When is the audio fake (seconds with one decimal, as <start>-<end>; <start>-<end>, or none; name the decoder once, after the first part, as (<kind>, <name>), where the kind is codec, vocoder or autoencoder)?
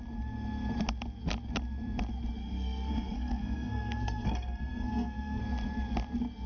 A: 2.4-5.4 (codec, SNAC)